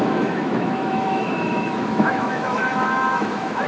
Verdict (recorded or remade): remade